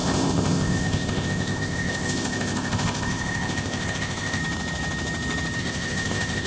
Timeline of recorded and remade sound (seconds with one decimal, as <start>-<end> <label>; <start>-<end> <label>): 0.0-4.4 remade; 4.4-5.6 recorded; 5.6-6.5 remade